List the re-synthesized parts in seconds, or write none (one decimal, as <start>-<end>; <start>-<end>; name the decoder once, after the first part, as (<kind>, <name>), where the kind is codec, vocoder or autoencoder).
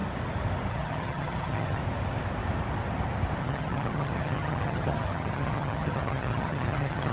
0.7-1.8 (vocoder, HiFi-GAN); 3.4-7.1